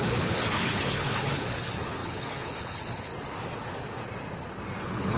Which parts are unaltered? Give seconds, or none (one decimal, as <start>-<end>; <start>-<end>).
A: 3.1-4.8